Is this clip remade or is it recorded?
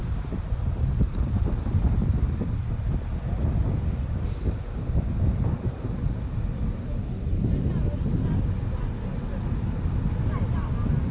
recorded